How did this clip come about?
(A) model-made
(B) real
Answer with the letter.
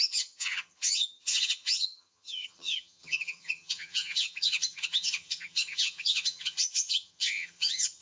A